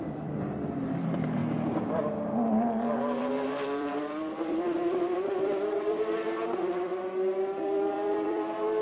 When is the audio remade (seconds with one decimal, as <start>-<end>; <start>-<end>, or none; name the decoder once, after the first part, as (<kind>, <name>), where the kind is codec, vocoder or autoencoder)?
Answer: 0.0-1.4 (vocoder, BigVGAN v2); 3.2-6.9; 7.9-8.8